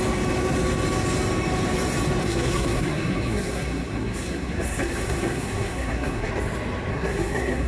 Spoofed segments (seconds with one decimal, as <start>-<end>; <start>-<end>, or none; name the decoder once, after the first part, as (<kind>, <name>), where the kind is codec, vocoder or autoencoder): 2.2-6.3 (codec, SNAC); 6.9-7.7

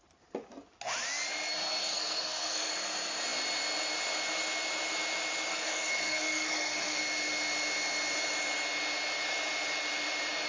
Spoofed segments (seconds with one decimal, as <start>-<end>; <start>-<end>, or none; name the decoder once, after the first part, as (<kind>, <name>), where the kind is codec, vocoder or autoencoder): 1.8-2.7 (codec, SNAC); 5.5-7.0

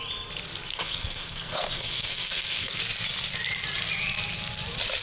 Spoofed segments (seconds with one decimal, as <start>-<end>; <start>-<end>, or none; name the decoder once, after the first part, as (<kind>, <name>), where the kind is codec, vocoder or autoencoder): 0.7-2.8 (codec, SNAC)

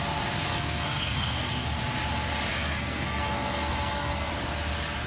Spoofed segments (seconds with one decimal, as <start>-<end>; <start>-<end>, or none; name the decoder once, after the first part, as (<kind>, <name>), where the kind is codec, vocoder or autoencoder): 0.5-1.8 (codec, SNAC); 2.5-4.3

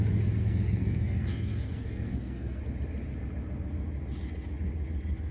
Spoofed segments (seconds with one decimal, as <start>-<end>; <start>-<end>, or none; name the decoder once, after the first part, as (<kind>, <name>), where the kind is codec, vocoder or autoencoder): 0.4-2.6 (codec, SNAC)